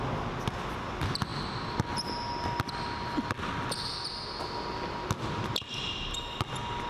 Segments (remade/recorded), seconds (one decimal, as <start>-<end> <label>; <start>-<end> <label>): 0.0-6.9 recorded